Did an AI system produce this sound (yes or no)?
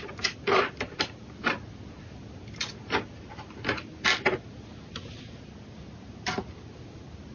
no